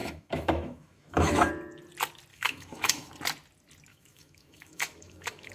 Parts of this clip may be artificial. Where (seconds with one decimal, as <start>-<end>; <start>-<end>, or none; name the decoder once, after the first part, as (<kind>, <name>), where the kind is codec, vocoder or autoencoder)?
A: 0.0-1.5 (autoencoder, DAC-VAE); 2.3-3.1; 3.9-5.5